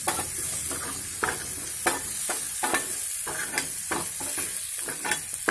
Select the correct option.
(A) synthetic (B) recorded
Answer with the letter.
B